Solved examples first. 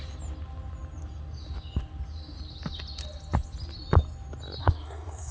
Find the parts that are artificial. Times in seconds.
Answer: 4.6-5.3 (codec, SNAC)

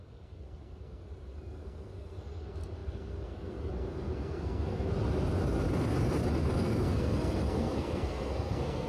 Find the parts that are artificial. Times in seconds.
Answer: 0.0-4.9 (codec, SNAC); 6.5-8.9

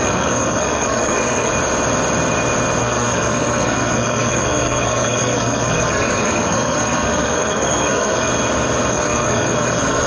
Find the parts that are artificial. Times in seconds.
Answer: 0.0-1.5 (codec, SNAC); 2.8-8.3; 8.9-10.1

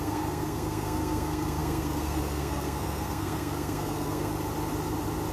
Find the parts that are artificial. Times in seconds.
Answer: 0.0-4.3 (codec, SNAC)

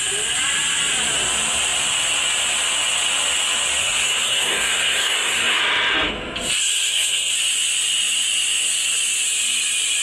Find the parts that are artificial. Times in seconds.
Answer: 3.8-5.6 (codec, SNAC); 6.6-7.3

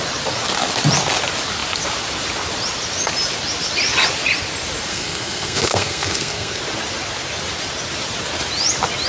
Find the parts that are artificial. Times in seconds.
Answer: 4.9-6.6 (codec, SNAC)

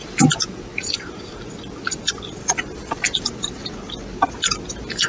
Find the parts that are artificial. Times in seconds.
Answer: none